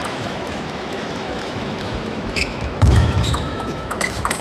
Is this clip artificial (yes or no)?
yes